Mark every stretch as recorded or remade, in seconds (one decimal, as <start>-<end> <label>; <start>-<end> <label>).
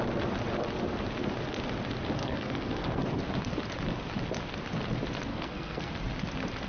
0.0-2.2 recorded; 2.2-3.0 remade; 3.0-5.3 recorded; 5.3-5.9 remade; 5.9-6.7 recorded